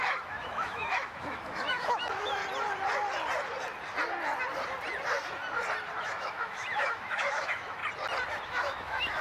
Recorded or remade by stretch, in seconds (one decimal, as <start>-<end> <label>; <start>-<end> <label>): 0.0-2.4 remade; 2.4-6.0 recorded; 6.0-7.8 remade; 7.8-8.5 recorded; 8.5-9.2 remade